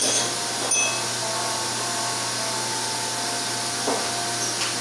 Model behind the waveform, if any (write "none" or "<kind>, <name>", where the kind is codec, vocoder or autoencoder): none